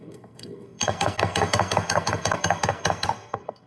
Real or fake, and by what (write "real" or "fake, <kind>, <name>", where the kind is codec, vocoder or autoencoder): fake, codec, SNAC